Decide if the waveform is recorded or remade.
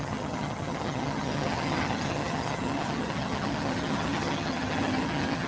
remade